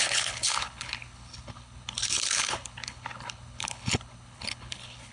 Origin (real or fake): fake